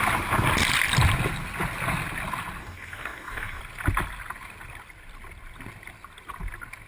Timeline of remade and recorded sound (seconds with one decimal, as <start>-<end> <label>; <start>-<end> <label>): 0.0-2.6 recorded; 2.6-3.6 remade; 3.6-6.9 recorded